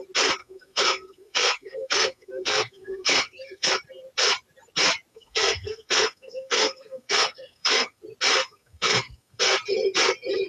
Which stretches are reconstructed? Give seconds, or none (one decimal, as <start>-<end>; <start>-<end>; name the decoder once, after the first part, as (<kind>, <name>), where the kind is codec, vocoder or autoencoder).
0.4-3.7 (codec, SNAC); 5.1-8.0; 8.4-9.4